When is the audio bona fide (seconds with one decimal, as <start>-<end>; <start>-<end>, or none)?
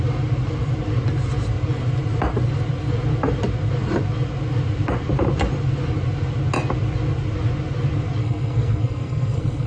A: 0.0-8.2